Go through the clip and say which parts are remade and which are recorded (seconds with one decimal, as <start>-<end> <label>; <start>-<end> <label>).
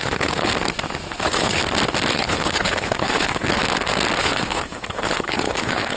0.0-0.5 remade; 0.5-1.1 recorded; 1.1-1.6 remade; 1.6-2.1 recorded; 2.1-3.6 remade; 3.6-4.2 recorded; 4.2-6.0 remade